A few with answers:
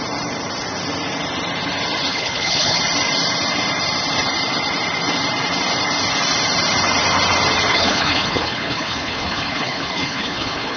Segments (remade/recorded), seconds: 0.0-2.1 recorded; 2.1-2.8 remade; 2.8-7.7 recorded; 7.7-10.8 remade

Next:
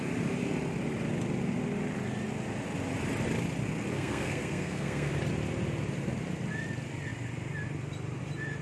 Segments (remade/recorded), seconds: 0.0-3.9 recorded; 3.9-5.1 remade; 5.1-8.6 recorded

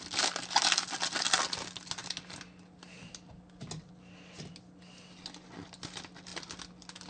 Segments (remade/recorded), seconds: 0.0-7.1 recorded

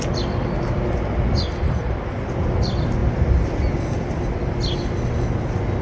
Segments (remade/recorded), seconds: 0.0-5.8 recorded

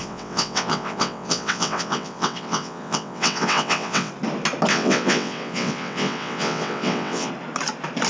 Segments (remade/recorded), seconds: 0.0-4.1 remade; 4.1-4.7 recorded; 4.7-7.3 remade; 7.3-8.1 recorded

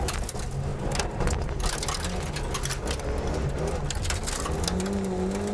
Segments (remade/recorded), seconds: 0.0-5.5 recorded

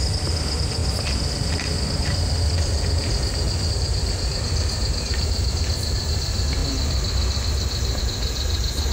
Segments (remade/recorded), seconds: 0.0-6.6 remade; 6.6-8.0 recorded; 8.0-8.9 remade

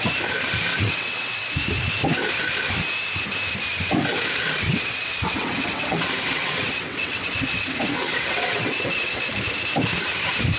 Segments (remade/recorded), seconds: 0.0-0.7 recorded; 0.7-1.5 remade; 1.5-4.4 recorded; 4.4-9.3 remade; 9.3-10.6 recorded